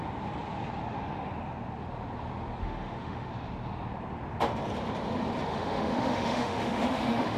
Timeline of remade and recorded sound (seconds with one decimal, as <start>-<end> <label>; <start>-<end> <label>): 0.0-2.6 recorded; 2.6-3.3 remade; 3.3-5.5 recorded; 5.5-7.4 remade